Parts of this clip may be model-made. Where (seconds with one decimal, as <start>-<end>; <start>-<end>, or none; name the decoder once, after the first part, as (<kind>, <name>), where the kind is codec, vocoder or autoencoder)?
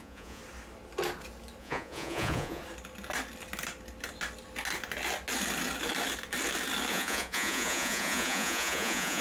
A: 0.0-0.4 (vocoder, Vocos); 1.6-2.6; 6.9-9.2